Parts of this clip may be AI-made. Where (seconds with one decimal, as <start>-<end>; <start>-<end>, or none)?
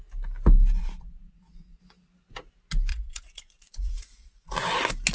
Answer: 0.8-1.8; 2.9-4.5